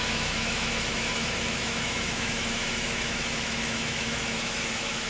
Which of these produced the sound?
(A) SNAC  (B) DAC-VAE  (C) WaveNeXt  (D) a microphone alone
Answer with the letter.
B